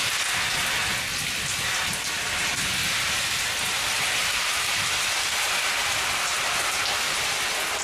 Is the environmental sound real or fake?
real